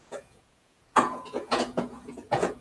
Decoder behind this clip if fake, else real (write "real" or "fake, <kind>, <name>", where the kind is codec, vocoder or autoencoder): fake, vocoder, Vocos